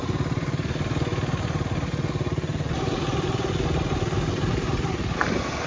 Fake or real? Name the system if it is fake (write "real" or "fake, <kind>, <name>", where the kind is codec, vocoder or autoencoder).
real